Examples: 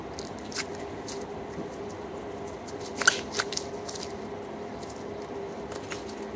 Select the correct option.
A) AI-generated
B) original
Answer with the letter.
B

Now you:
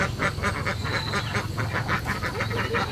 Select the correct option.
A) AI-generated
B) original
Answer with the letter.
B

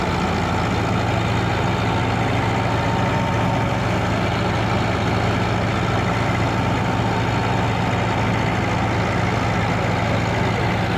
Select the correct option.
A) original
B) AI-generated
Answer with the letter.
A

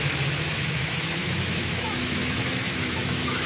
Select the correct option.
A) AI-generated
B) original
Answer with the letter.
A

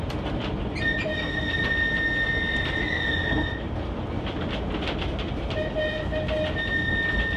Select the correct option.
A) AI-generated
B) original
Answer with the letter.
B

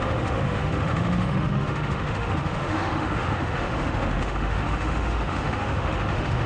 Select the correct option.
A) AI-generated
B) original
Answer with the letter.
A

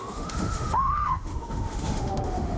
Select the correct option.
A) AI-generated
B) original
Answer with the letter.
A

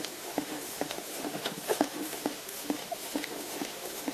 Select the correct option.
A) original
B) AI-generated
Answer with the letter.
B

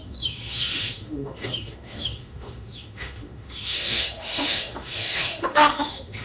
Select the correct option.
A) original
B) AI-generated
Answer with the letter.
B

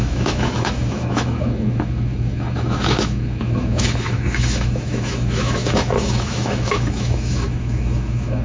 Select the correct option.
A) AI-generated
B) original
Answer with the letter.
A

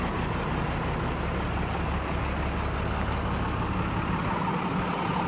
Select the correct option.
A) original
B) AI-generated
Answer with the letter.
A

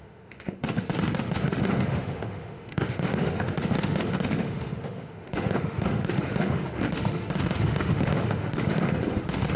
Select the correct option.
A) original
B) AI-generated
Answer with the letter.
B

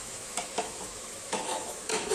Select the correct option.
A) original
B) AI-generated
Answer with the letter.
B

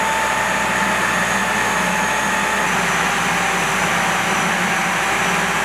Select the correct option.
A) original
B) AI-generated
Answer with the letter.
A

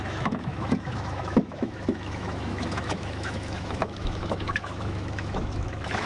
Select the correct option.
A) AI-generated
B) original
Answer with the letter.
A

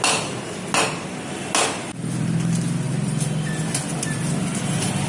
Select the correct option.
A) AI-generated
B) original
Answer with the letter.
B